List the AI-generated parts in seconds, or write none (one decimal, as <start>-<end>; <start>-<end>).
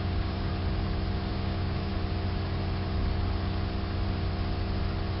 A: 0.0-0.5; 1.3-1.9